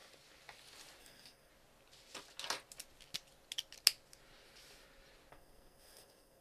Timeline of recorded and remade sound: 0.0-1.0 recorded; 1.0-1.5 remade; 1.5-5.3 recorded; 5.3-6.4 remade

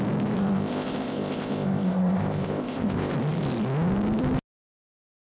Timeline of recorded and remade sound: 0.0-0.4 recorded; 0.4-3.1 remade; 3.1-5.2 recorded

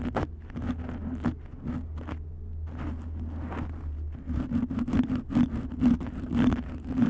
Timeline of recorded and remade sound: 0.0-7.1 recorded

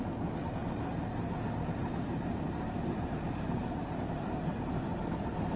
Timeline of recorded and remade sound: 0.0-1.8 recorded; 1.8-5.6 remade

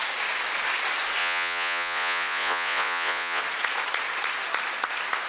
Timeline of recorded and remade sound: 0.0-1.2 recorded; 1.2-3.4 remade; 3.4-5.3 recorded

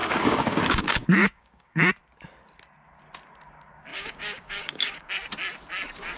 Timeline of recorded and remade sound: 0.0-1.9 remade; 1.9-3.9 recorded; 3.9-5.1 remade; 5.1-6.2 recorded

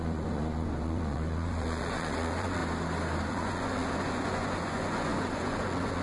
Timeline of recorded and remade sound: 0.0-2.6 remade; 2.6-3.3 recorded; 3.3-6.0 remade